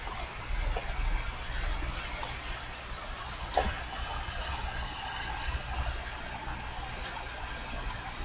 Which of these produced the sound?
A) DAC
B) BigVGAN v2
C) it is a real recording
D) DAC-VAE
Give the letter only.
C